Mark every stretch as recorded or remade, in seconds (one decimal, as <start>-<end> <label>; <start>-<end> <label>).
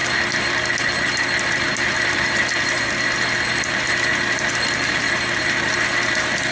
0.0-4.1 recorded; 4.1-5.0 remade; 5.0-6.5 recorded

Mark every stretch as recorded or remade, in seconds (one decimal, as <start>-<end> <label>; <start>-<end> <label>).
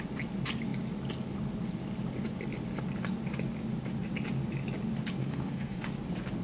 0.0-5.2 recorded; 5.2-5.8 remade; 5.8-6.4 recorded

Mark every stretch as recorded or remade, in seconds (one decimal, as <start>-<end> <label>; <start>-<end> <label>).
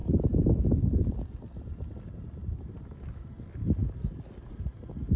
0.0-2.4 recorded; 2.4-3.3 remade; 3.3-5.2 recorded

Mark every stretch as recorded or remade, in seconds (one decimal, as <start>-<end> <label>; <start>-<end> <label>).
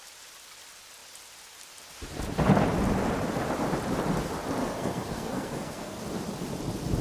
0.0-4.6 recorded; 4.6-6.0 remade; 6.0-7.0 recorded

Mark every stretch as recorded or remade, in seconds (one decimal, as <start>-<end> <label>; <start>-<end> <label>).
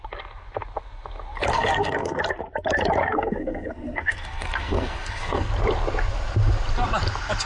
0.0-1.5 recorded; 1.5-2.2 remade; 2.2-3.0 recorded; 3.0-5.5 remade; 5.5-7.5 recorded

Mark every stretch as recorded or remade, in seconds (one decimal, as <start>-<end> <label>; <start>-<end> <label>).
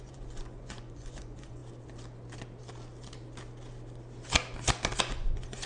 0.0-1.6 remade; 1.6-5.0 recorded; 5.0-5.7 remade